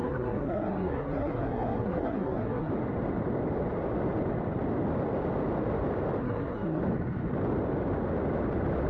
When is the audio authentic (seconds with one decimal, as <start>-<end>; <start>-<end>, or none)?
2.7-6.2; 6.8-8.9